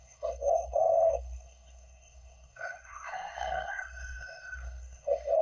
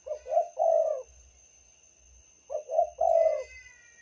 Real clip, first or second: second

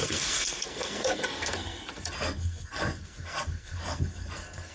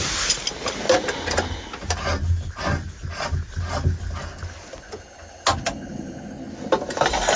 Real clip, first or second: second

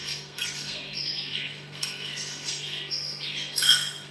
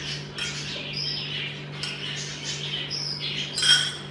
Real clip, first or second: second